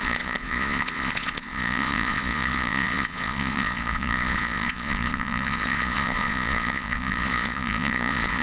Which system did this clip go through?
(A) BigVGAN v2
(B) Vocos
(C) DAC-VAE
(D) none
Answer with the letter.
B